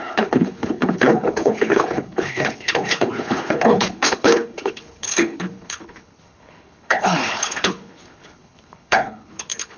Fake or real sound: fake